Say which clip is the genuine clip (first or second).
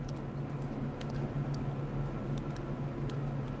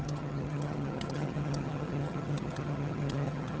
first